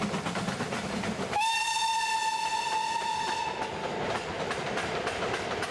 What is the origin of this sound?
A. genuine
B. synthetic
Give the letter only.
A